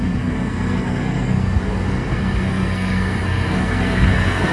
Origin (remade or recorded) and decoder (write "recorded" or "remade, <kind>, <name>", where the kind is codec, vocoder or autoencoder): remade, codec, SNAC